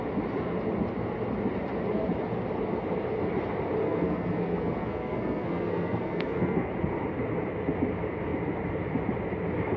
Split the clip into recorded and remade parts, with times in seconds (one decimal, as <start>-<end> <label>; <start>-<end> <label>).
0.0-3.8 recorded; 3.8-6.7 remade; 6.7-9.8 recorded